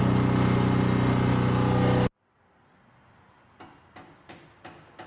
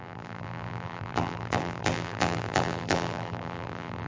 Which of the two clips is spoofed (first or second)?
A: second